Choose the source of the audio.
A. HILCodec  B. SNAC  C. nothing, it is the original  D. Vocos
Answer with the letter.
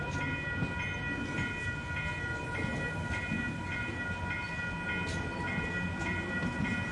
C